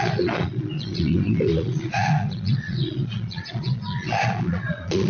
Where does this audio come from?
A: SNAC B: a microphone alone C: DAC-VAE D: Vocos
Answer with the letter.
D